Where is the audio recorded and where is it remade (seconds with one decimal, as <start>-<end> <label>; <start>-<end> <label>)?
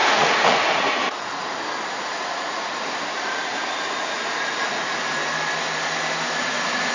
0.0-5.2 remade; 5.2-6.4 recorded; 6.4-6.9 remade